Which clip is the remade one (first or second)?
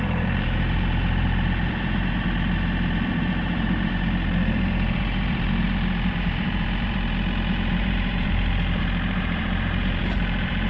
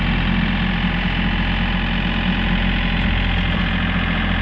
first